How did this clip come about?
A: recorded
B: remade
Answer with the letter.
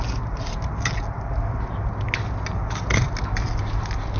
A